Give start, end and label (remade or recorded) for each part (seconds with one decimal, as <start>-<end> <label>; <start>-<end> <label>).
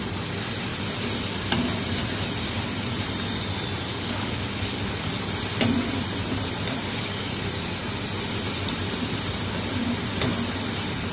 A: 0.0-3.9 recorded; 3.9-5.2 remade; 5.2-6.8 recorded; 6.8-7.5 remade; 7.5-11.1 recorded